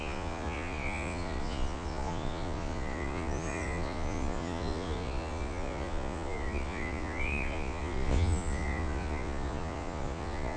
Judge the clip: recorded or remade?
remade